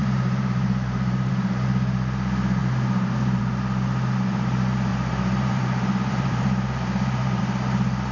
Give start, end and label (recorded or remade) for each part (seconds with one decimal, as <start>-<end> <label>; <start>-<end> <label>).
0.0-1.3 remade; 1.3-4.9 recorded; 4.9-7.4 remade; 7.4-8.1 recorded